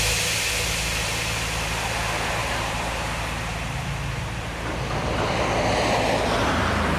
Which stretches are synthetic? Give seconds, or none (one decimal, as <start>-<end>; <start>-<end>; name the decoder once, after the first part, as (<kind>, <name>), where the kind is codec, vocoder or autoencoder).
2.4-6.6 (vocoder, BigVGAN v2)